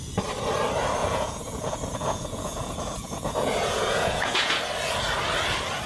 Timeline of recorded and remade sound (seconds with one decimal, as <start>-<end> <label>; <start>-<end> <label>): 0.0-1.0 recorded; 1.0-4.5 remade; 4.5-5.9 recorded